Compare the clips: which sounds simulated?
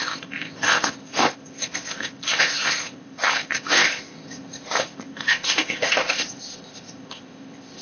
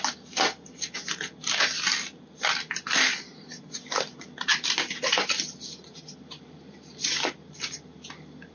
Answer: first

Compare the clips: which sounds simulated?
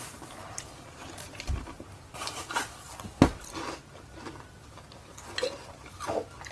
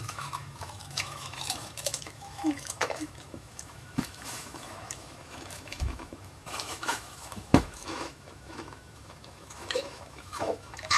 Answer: second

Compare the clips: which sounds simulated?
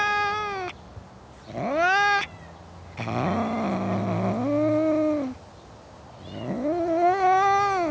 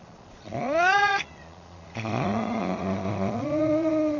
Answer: second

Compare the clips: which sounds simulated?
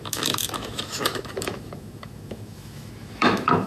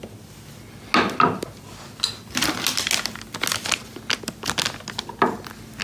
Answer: first